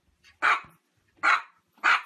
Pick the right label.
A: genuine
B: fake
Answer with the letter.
A